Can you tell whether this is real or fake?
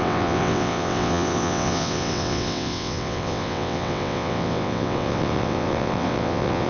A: fake